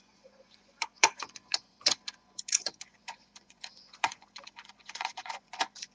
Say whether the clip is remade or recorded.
remade